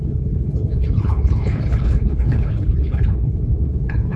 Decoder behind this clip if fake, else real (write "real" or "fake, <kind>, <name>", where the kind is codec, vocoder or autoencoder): fake, codec, HILCodec